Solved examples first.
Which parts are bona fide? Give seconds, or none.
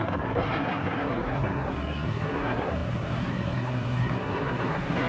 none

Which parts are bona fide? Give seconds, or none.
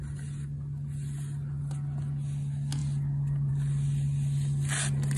0.0-5.2